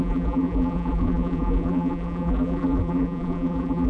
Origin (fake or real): fake